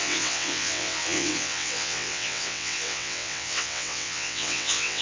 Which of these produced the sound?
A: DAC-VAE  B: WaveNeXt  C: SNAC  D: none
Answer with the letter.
B